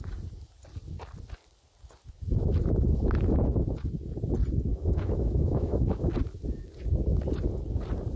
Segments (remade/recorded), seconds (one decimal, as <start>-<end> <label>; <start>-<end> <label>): 0.0-4.7 recorded; 4.7-6.1 remade; 6.1-8.2 recorded